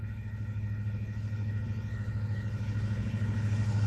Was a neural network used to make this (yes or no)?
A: yes